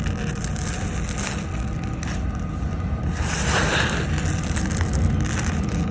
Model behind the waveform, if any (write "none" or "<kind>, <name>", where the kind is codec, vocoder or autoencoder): none